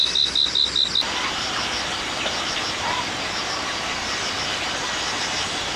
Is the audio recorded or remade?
recorded